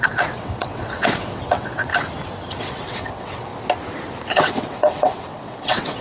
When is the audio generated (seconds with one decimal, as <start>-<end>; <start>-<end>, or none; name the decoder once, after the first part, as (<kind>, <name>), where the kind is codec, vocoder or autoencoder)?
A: 0.0-1.9 (vocoder, WaveNeXt); 2.6-3.5; 4.3-6.0